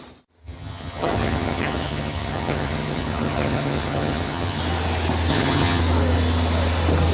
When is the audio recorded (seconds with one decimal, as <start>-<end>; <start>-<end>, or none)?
0.0-0.4; 4.6-5.3; 5.8-7.1